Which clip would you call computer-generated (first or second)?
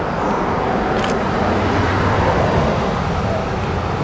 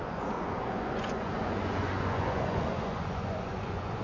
second